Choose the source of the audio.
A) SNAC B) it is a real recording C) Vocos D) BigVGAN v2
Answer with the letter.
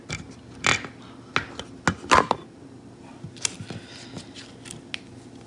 B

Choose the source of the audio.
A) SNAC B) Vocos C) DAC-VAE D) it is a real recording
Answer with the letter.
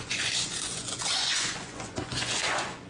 B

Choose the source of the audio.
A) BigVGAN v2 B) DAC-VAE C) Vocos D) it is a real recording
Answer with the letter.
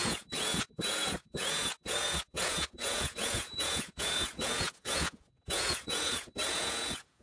C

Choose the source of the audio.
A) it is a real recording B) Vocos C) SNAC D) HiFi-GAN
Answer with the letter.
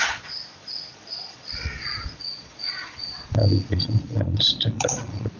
B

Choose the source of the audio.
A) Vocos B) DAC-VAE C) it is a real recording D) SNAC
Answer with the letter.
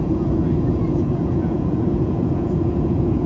A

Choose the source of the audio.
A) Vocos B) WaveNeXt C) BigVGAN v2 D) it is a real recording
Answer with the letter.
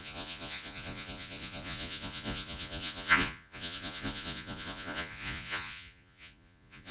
A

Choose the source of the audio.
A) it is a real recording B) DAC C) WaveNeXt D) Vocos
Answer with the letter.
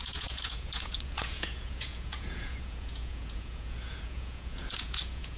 D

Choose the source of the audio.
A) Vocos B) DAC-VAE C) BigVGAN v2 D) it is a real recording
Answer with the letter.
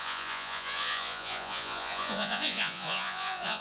A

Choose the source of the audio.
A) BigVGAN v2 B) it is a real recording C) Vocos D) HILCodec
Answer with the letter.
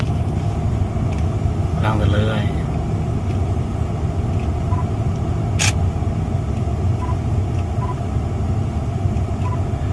B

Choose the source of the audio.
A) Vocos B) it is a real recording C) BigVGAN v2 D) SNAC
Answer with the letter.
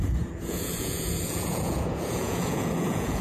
A